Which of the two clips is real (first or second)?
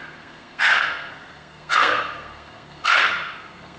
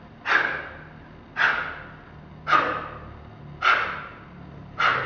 second